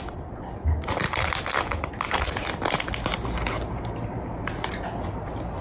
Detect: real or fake real